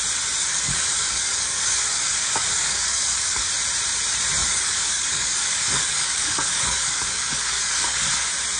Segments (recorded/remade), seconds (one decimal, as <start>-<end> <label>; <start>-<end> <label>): 0.0-0.4 recorded; 0.4-3.5 remade; 3.5-4.4 recorded; 4.4-8.0 remade; 8.0-8.6 recorded